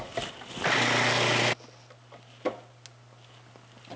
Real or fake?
real